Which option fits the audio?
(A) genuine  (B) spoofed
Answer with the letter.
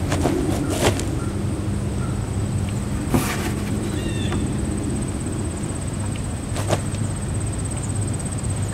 A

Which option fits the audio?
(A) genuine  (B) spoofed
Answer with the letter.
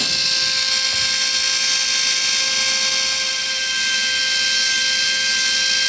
A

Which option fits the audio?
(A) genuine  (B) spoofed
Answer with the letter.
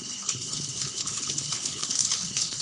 B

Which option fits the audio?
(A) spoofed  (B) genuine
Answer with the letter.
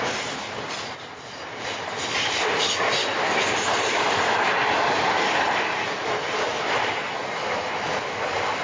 B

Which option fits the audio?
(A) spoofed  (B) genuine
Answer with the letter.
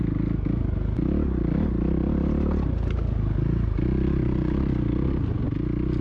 B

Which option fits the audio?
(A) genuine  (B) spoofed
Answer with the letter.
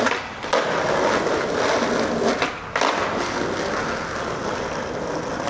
A